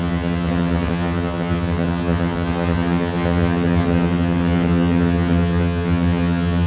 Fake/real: fake